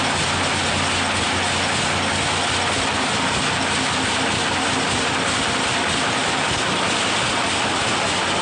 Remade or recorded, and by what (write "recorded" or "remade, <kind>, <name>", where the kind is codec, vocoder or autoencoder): recorded